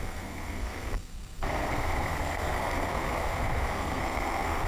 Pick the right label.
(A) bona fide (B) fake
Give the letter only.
B